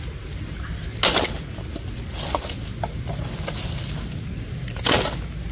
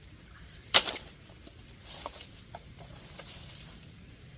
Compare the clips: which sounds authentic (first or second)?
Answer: first